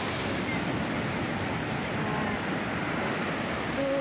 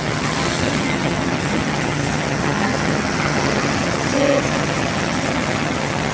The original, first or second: first